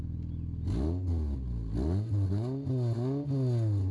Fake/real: real